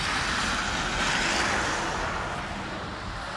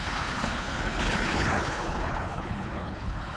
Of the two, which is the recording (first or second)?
first